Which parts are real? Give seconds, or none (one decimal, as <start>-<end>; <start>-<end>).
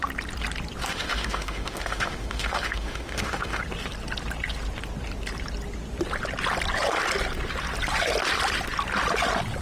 0.0-0.9; 3.6-9.6